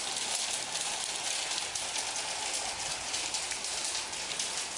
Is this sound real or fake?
real